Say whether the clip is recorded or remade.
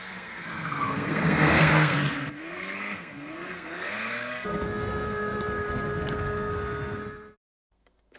remade